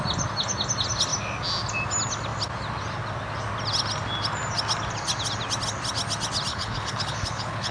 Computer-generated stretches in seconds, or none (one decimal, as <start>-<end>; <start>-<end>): 6.5-7.7